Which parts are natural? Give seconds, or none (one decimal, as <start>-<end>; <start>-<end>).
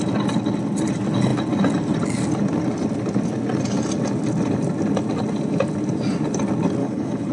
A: 0.0-6.8